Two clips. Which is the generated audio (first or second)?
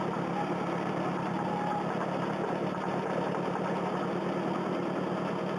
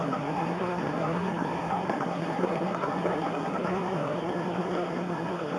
second